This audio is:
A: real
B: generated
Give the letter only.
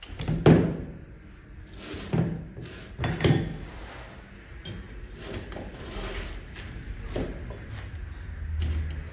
A